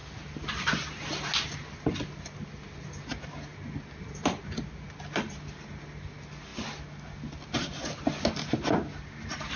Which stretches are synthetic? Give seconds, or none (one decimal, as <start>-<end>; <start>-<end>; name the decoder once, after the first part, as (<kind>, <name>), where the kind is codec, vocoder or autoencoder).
3.5-4.7 (vocoder, BigVGAN v2)

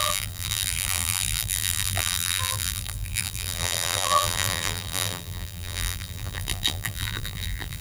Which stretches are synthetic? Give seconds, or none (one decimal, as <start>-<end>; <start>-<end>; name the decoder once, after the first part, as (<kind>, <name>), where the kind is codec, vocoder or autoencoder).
0.0-7.8 (vocoder, BigVGAN v2)

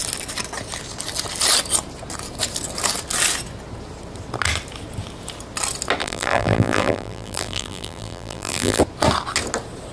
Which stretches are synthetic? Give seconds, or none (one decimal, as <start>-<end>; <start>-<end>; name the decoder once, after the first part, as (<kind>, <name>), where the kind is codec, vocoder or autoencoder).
6.0-8.8 (vocoder, BigVGAN v2)

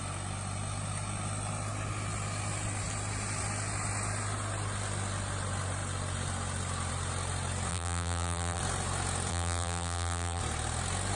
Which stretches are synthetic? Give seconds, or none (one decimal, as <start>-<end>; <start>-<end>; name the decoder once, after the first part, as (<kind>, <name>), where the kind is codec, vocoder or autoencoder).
7.7-8.6 (vocoder, BigVGAN v2); 9.3-10.4

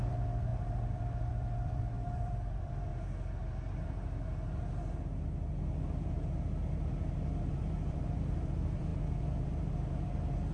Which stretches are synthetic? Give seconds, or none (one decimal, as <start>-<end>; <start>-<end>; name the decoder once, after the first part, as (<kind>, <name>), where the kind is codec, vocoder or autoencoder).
0.0-2.9 (vocoder, BigVGAN v2); 7.5-10.5

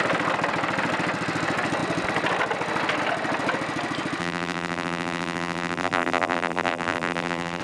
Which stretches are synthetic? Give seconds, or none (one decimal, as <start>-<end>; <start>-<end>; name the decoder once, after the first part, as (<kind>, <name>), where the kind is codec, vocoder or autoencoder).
4.2-7.6 (vocoder, BigVGAN v2)

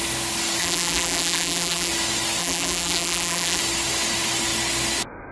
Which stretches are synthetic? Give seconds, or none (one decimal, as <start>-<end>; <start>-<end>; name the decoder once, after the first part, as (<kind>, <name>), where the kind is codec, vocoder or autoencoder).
0.6-1.9 (vocoder, BigVGAN v2); 2.4-3.6